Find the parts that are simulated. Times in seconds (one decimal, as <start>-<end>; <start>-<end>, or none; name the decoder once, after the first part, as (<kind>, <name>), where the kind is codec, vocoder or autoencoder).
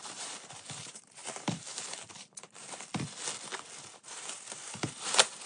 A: 0.0-2.9 (vocoder, BigVGAN v2); 3.8-5.5